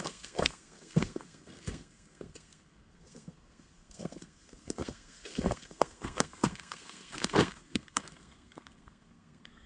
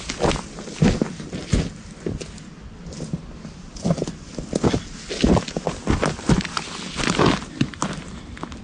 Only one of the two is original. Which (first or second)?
second